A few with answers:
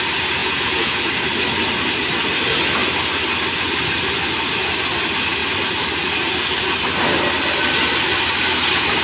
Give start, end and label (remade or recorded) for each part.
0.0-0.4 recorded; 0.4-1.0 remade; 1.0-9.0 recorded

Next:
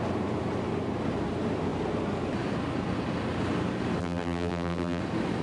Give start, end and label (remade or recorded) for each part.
0.0-4.0 recorded; 4.0-5.0 remade; 5.0-5.4 recorded

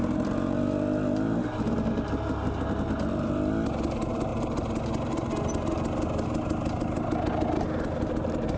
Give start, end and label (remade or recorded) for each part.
0.0-8.6 recorded